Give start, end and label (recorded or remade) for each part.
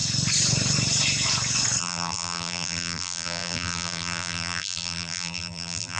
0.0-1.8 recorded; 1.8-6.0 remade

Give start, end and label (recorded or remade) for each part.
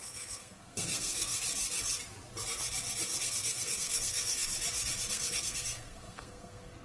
0.0-1.4 remade; 1.4-3.2 recorded; 3.2-4.5 remade; 4.5-5.1 recorded; 5.1-6.8 remade